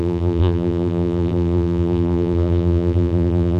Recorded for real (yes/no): no